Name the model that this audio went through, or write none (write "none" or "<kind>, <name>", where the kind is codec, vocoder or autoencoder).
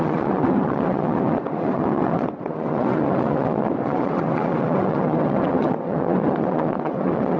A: vocoder, WaveNeXt